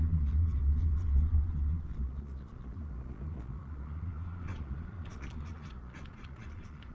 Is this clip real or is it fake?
fake